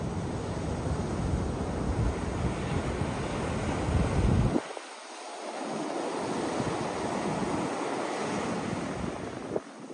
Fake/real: real